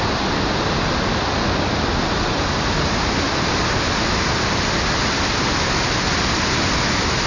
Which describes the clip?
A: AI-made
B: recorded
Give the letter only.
B